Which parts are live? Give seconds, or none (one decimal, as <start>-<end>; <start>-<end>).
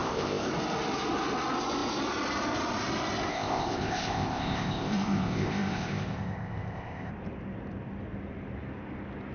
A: 0.5-3.3; 7.1-9.3